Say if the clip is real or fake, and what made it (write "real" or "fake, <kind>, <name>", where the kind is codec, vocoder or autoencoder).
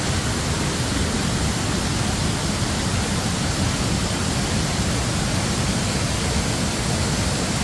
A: real